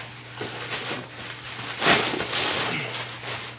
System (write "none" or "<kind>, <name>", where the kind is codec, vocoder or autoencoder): none